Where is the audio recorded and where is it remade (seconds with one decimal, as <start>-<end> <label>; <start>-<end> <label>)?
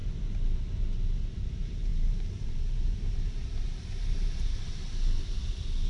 0.0-1.5 recorded; 1.5-5.9 remade